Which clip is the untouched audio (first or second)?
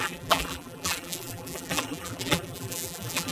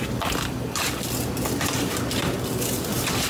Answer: second